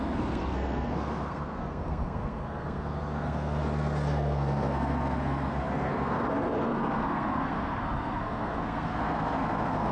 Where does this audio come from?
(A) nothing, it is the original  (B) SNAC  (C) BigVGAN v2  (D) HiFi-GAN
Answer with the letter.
B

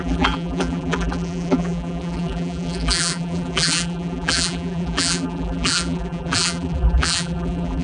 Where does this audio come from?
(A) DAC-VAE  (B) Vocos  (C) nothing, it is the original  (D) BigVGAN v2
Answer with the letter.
D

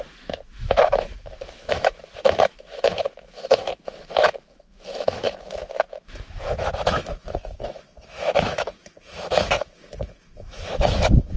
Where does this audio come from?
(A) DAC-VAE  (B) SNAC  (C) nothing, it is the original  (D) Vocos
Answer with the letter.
A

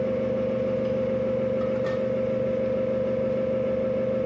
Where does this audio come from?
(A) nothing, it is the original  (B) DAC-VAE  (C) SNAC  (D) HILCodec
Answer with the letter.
A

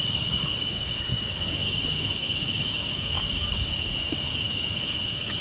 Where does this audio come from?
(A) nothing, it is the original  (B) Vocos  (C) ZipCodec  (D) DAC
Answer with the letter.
D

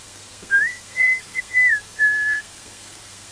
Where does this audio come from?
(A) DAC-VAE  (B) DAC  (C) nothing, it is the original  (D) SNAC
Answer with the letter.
D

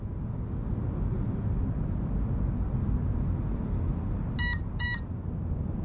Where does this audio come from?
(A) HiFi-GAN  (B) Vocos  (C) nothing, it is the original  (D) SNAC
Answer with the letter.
C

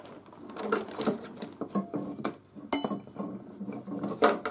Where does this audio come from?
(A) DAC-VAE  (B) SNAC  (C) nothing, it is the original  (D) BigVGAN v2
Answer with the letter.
C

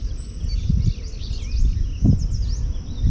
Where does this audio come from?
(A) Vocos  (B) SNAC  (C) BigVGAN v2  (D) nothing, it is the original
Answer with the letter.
D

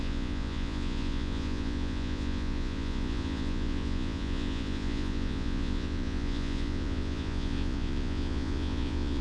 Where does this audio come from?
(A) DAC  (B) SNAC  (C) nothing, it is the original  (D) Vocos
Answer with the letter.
D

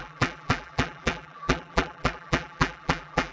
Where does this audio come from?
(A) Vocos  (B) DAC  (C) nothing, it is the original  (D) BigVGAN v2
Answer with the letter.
D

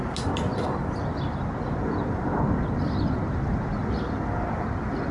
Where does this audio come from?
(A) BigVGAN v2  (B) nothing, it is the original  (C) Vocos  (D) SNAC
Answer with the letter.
B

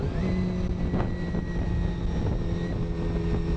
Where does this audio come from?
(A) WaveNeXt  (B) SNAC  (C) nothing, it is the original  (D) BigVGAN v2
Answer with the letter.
C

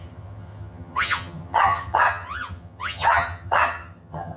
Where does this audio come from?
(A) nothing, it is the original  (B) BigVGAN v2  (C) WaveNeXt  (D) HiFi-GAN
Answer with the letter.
D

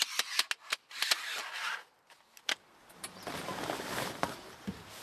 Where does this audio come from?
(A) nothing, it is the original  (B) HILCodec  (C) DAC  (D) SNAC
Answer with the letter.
A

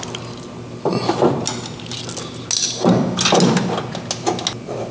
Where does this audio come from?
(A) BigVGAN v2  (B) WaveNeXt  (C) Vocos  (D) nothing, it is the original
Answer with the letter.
D